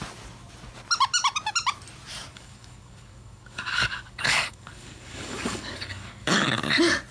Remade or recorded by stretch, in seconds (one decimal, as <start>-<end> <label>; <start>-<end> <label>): 0.0-2.3 recorded; 2.3-6.6 remade; 6.6-7.1 recorded